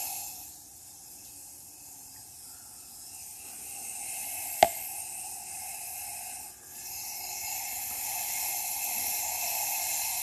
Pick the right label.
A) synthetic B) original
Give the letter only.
B